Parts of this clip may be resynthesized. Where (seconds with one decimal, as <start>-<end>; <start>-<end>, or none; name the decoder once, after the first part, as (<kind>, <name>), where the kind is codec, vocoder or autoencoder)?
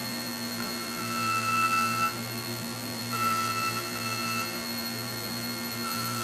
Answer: 0.0-6.2 (vocoder, BigVGAN v2)